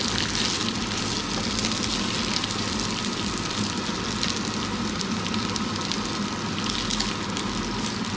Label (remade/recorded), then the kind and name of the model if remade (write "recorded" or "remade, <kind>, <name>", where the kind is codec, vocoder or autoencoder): recorded